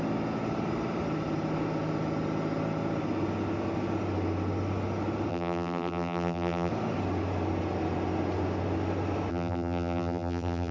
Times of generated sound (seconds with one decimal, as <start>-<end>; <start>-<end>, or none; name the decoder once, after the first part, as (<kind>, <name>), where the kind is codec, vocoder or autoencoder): 5.3-6.7 (vocoder, BigVGAN v2); 9.3-10.7